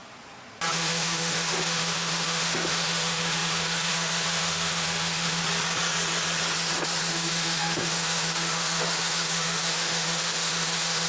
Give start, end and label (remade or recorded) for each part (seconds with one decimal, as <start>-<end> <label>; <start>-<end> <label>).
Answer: 0.0-0.7 recorded; 0.7-5.4 remade; 5.4-7.1 recorded; 7.1-11.1 remade